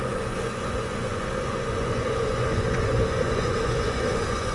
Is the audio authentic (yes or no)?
no